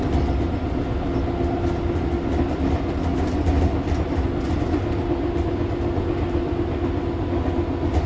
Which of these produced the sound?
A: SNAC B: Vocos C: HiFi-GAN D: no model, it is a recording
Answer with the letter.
D